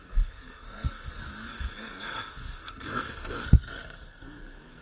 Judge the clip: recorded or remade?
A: remade